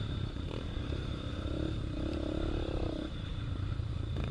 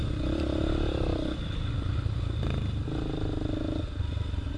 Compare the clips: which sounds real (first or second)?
second